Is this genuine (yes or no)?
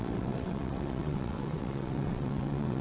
no